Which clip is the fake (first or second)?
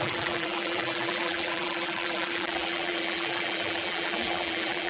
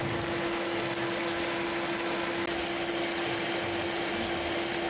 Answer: first